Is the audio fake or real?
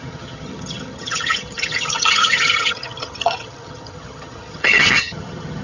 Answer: fake